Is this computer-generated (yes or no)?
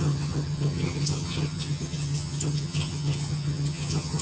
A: yes